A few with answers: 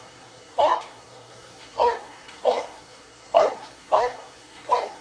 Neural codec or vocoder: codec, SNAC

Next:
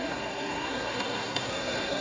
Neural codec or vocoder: codec, SNAC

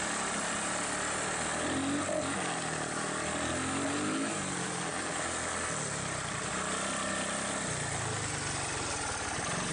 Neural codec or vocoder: none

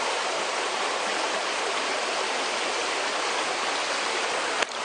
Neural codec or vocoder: none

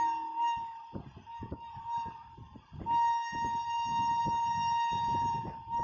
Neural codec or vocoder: none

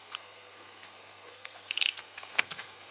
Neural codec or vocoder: codec, SNAC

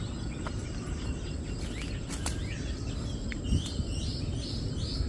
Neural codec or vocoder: none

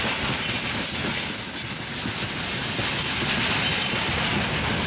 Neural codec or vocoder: none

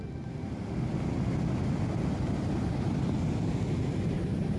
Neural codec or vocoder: none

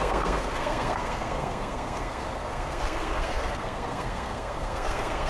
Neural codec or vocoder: codec, SNAC